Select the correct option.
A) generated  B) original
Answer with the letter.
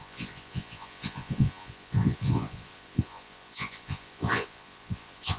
A